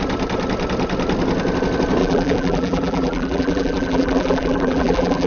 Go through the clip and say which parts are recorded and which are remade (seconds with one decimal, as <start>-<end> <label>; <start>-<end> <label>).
0.0-2.0 recorded; 2.0-5.3 remade